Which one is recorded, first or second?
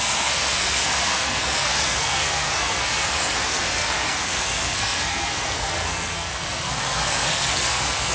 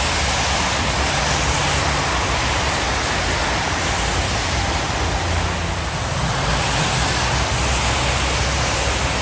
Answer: second